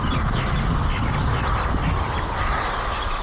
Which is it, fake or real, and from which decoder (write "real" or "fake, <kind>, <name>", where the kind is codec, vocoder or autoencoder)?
real